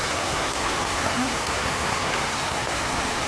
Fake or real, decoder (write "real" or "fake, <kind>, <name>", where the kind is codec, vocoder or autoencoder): fake, codec, SNAC